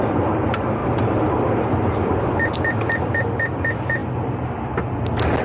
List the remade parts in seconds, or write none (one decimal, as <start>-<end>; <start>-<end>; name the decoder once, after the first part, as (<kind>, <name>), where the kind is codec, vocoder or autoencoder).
0.8-1.9 (vocoder, BigVGAN v2)